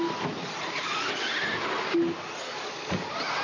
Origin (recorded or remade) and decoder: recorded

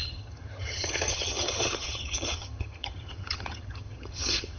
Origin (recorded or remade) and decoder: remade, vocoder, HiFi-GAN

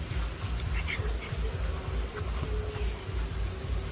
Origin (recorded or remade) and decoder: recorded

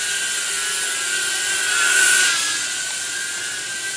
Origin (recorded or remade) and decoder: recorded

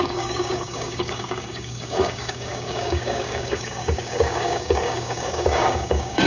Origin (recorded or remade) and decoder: remade, codec, DAC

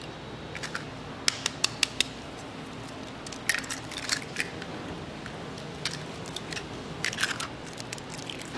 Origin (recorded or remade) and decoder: recorded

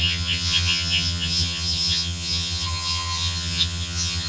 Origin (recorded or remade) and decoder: remade, vocoder, HiFi-GAN